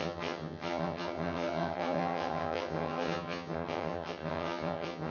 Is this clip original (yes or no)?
no